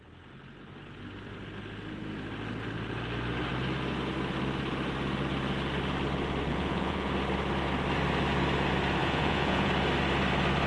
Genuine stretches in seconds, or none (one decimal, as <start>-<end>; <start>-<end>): 0.0-6.5; 7.1-9.0; 9.7-10.7